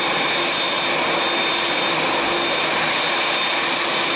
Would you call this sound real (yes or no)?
yes